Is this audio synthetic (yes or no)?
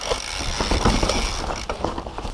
no